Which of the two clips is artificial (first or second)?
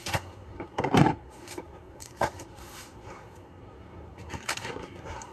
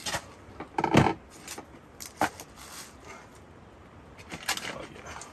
first